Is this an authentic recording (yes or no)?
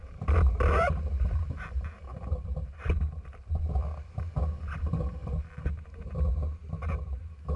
yes